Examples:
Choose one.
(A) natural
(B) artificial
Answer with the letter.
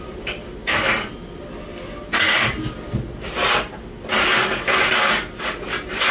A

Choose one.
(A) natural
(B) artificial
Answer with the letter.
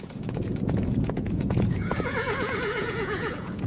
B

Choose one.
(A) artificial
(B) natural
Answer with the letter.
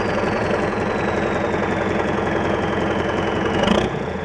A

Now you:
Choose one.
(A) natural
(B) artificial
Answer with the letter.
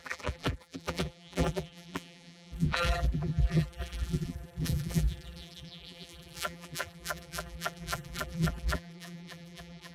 B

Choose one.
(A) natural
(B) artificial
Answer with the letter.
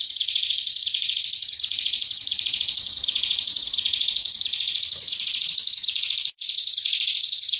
B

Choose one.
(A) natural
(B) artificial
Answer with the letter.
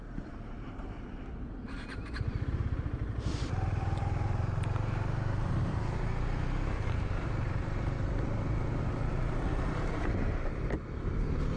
B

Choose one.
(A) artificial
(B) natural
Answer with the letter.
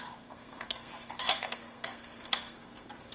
A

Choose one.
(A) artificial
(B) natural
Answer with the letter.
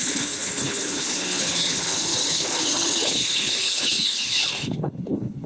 A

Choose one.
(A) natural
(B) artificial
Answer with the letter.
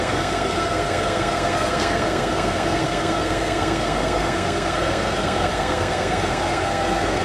B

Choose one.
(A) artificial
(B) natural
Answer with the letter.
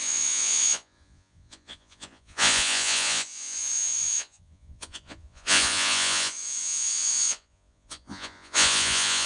A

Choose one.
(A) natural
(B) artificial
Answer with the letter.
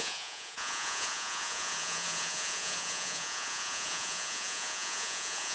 B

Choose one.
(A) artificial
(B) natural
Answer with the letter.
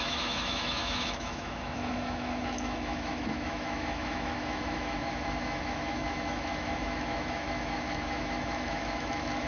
A